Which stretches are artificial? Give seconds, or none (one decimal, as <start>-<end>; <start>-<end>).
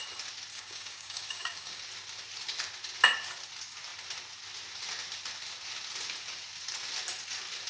0.5-1.8